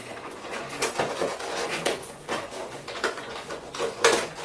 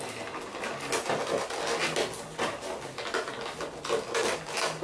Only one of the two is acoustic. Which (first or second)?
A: second